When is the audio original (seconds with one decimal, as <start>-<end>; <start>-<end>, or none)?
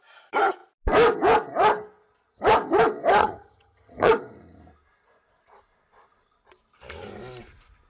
0.0-3.2; 4.1-7.9